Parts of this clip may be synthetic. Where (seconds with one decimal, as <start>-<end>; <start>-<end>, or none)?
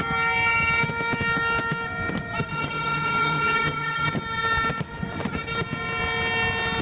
2.5-4.1